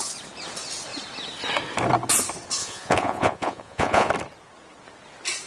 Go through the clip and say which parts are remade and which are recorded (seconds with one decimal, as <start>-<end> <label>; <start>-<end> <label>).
0.0-2.6 recorded; 2.6-4.1 remade; 4.1-5.5 recorded

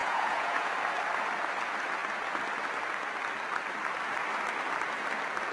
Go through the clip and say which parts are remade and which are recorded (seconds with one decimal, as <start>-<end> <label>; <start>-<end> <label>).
0.0-0.7 remade; 0.7-5.5 recorded

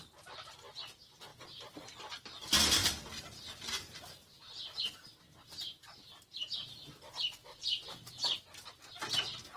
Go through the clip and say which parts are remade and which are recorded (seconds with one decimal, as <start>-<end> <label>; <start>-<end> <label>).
0.0-9.6 recorded

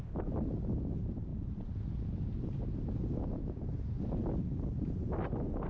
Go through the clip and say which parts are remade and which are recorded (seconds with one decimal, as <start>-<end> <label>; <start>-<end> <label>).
0.0-5.7 recorded

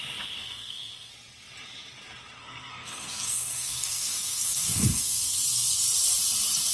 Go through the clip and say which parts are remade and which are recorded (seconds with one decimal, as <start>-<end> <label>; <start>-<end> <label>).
0.0-0.4 recorded; 0.4-1.1 remade; 1.1-2.4 recorded; 2.4-5.8 remade; 5.8-6.7 recorded

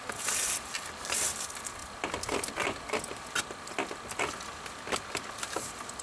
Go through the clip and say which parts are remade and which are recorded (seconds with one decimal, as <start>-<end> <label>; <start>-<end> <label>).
0.0-6.0 recorded